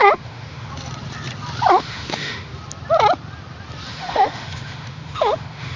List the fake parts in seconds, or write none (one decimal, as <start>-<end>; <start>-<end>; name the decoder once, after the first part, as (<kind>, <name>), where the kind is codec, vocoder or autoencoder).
0.0-0.7 (autoencoder, DAC-VAE); 1.7-2.5; 3.9-5.8